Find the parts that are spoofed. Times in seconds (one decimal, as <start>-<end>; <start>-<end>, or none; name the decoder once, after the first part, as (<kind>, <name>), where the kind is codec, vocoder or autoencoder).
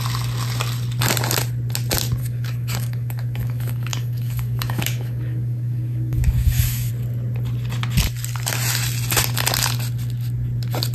2.2-6.9 (codec, DAC)